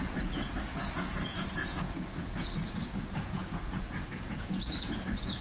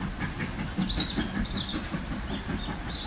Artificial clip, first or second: first